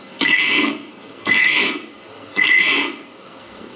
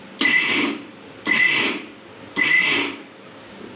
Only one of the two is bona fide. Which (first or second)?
second